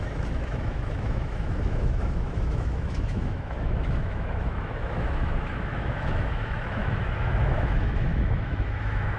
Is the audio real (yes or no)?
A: no